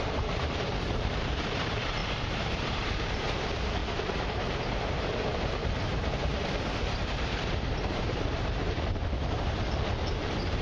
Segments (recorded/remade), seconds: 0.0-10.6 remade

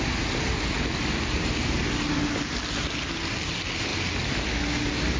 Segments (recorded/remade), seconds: 0.0-5.2 recorded

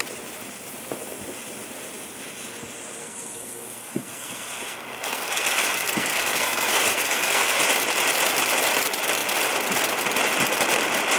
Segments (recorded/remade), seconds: 0.0-3.0 recorded; 3.0-7.6 remade; 7.6-11.2 recorded

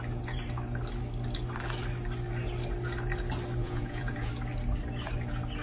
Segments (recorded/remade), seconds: 0.0-3.6 recorded; 3.6-4.3 remade; 4.3-5.6 recorded

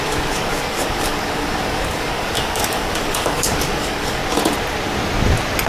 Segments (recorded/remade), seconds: 0.0-4.2 remade; 4.2-5.7 recorded

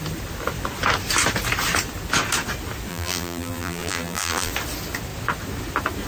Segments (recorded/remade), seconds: 0.0-2.9 recorded; 2.9-4.5 remade; 4.5-6.1 recorded